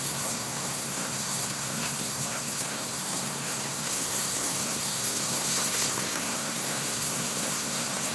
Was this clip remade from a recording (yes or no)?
yes